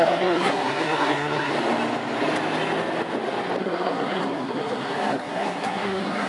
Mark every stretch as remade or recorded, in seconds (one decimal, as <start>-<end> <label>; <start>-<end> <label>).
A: 0.0-1.5 remade; 1.5-3.6 recorded; 3.6-6.3 remade